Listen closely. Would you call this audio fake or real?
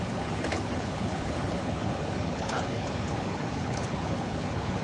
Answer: fake